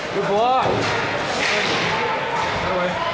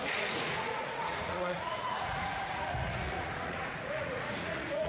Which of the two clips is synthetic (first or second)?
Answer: second